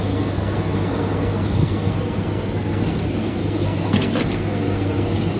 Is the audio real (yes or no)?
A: no